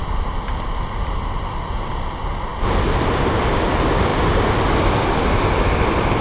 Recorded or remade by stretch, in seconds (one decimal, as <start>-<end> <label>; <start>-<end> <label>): 0.0-6.2 recorded